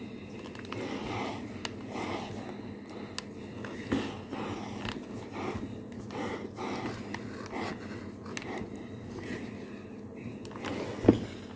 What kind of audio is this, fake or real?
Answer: real